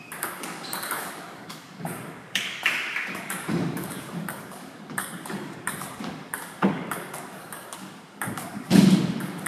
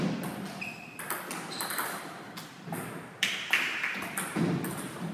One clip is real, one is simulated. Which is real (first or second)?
second